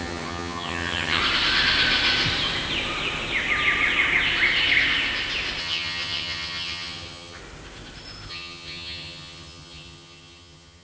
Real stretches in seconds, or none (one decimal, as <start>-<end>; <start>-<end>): 1.2-5.6; 7.4-8.3